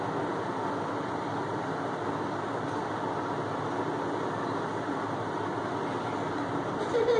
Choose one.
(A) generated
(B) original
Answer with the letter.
B